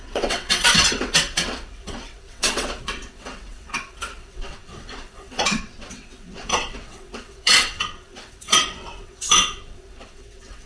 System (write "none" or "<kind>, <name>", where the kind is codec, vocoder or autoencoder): vocoder, WaveNeXt